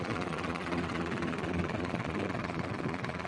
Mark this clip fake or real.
fake